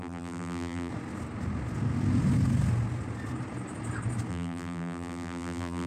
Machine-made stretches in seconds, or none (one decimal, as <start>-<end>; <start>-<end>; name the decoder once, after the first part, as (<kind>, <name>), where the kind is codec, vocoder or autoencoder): 0.0-0.9 (vocoder, BigVGAN v2); 4.3-5.9